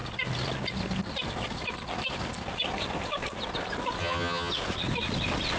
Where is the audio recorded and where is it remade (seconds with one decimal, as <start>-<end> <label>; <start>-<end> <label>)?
0.0-4.0 recorded; 4.0-4.5 remade; 4.5-5.6 recorded